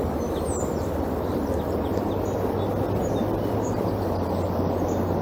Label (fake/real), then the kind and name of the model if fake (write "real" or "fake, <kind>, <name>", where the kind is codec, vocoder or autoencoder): real